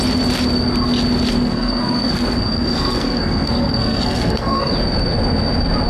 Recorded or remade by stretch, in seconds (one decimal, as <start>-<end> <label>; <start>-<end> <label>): 0.0-1.3 recorded; 1.3-4.7 remade; 4.7-5.9 recorded